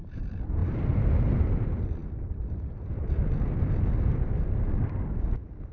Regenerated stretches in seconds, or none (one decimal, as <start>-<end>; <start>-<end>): none